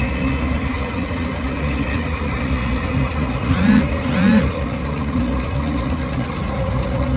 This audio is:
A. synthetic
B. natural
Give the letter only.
A